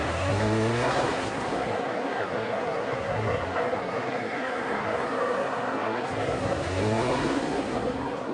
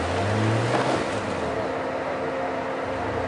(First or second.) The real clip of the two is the second